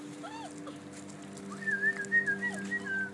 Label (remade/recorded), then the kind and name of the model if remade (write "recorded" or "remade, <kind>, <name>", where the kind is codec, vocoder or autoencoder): recorded